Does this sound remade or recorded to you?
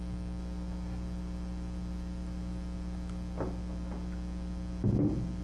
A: recorded